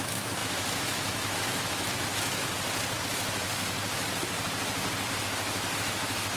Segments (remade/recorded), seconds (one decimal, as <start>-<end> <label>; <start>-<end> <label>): 0.0-2.4 remade; 2.4-3.0 recorded; 3.0-3.6 remade; 3.6-5.2 recorded; 5.2-6.4 remade

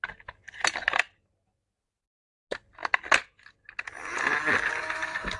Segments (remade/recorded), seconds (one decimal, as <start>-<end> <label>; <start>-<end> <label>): 0.0-5.4 recorded

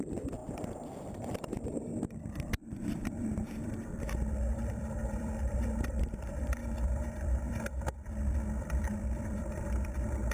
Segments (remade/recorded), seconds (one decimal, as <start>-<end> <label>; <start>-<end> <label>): 0.0-10.3 remade

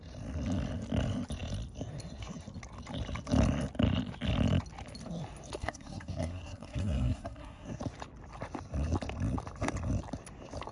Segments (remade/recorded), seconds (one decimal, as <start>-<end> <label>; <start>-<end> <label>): 0.0-5.6 recorded; 5.6-7.8 remade; 7.8-10.7 recorded

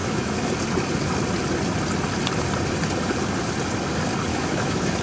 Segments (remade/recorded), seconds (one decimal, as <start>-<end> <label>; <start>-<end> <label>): 0.0-0.5 remade; 0.5-4.3 recorded; 4.3-5.0 remade

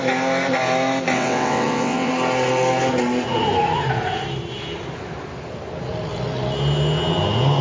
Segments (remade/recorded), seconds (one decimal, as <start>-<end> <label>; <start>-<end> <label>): 0.0-1.1 recorded; 1.1-2.1 remade; 2.1-7.6 recorded

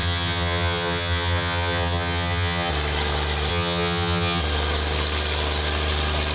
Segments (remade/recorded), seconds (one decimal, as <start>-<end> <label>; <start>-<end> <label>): 0.0-2.7 remade; 2.7-3.5 recorded; 3.5-4.4 remade; 4.4-6.3 recorded